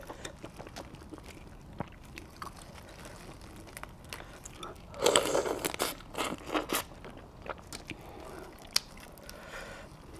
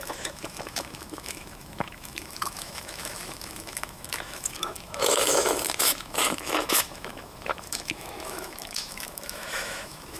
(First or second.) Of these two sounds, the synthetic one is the second